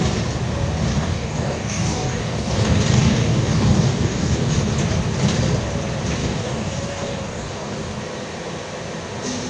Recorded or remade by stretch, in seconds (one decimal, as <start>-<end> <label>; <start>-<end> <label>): 0.0-0.9 recorded; 0.9-4.7 remade; 4.7-6.2 recorded; 6.2-8.0 remade; 8.0-9.5 recorded

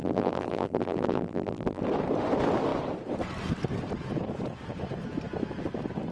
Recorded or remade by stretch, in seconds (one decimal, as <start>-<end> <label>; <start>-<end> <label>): 0.0-1.8 remade; 1.8-6.1 recorded

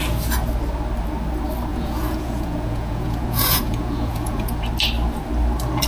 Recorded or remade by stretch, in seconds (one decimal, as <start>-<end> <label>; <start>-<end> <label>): 0.0-1.7 recorded; 1.7-4.7 remade; 4.7-5.9 recorded

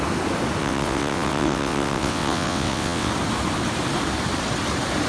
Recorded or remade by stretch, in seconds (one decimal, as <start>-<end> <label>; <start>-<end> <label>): 0.0-0.6 recorded; 0.6-3.1 remade; 3.1-5.1 recorded

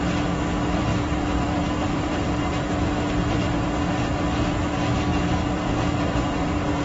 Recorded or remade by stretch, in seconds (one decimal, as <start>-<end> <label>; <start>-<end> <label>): 0.0-0.9 recorded; 0.9-2.7 remade; 2.7-5.1 recorded; 5.1-6.8 remade

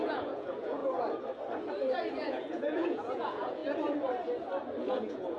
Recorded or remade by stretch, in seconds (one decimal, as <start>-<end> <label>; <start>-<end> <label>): 0.0-0.8 remade; 0.8-2.1 recorded; 2.1-3.6 remade; 3.6-4.8 recorded; 4.8-5.4 remade

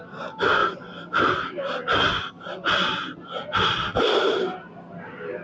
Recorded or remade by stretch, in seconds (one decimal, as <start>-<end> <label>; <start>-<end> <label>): 0.0-5.4 recorded

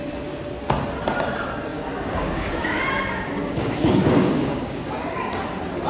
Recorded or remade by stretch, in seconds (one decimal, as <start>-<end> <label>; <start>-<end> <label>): 0.0-1.7 recorded; 1.7-5.2 remade; 5.2-5.9 recorded